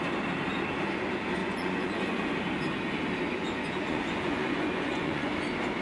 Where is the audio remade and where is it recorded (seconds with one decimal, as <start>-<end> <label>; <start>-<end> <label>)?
0.0-1.4 recorded; 1.4-2.2 remade; 2.2-3.4 recorded; 3.4-5.3 remade; 5.3-5.8 recorded